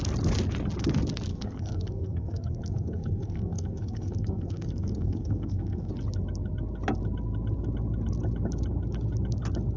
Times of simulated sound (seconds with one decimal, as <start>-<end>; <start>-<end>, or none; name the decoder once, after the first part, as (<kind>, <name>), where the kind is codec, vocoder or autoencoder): 1.3-5.9 (codec, SNAC)